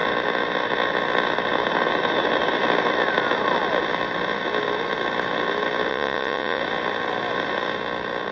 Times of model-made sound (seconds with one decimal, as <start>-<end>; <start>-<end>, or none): 5.9-6.6